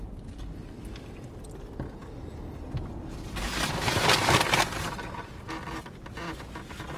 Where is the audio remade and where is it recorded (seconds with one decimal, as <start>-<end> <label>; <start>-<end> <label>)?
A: 0.0-7.0 recorded